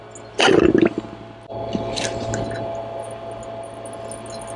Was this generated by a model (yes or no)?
no